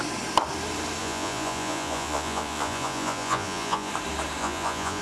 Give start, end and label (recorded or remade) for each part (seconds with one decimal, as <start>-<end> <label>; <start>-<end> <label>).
0.0-1.0 recorded; 1.0-3.9 remade; 3.9-4.4 recorded; 4.4-5.0 remade